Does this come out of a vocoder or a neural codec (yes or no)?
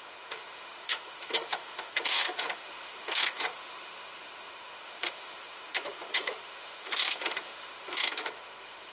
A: yes